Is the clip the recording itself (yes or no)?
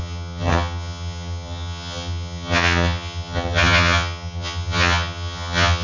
no